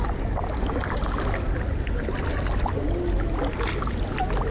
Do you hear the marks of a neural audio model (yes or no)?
no